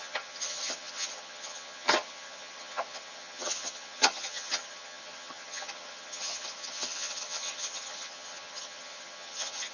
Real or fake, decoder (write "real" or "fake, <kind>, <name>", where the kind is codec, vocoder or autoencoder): fake, vocoder, HiFi-GAN